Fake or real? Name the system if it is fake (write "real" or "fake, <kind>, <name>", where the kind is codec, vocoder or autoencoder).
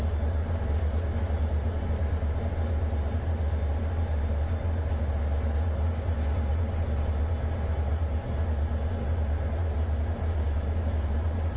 real